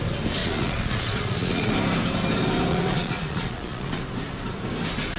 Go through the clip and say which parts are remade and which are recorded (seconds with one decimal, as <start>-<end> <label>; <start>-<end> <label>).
0.0-0.4 recorded; 0.4-1.7 remade; 1.7-2.7 recorded; 2.7-4.0 remade; 4.0-5.2 recorded